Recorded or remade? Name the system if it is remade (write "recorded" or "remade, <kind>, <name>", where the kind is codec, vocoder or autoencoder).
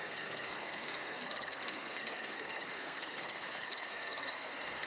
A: remade, codec, SNAC